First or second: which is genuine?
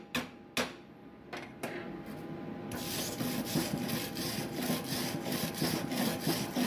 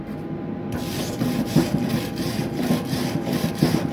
first